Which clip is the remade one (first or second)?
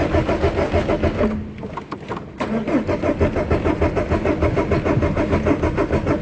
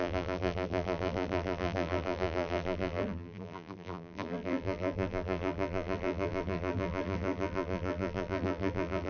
second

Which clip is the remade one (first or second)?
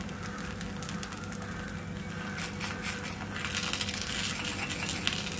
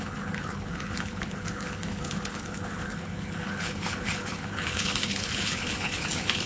second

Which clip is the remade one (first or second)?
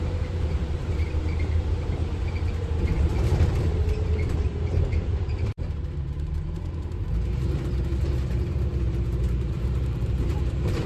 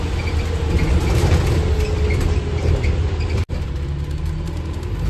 first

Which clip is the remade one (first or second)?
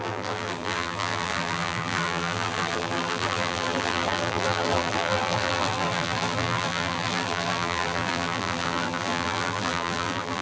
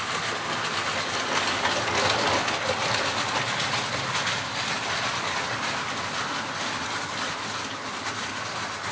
first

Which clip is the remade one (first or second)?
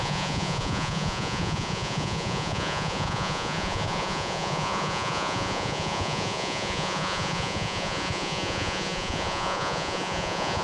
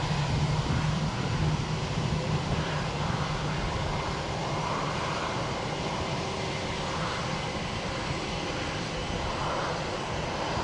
first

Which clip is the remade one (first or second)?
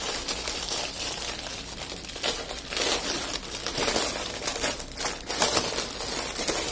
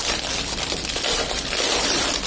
second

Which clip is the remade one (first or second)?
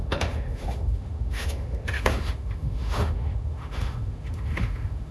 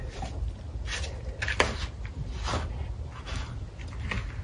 first